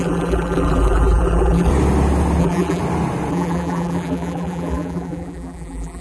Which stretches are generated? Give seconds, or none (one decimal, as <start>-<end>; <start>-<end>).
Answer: 0.0-1.7; 2.4-2.8; 3.3-6.0